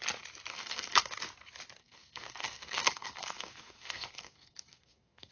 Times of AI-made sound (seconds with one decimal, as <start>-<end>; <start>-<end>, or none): 0.5-1.0; 1.8-5.3